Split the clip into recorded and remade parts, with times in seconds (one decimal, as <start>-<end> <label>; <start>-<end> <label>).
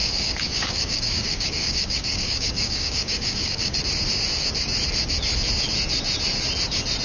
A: 0.0-3.8 remade; 3.8-7.0 recorded